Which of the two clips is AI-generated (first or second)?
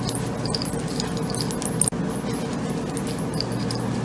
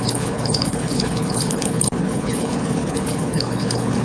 second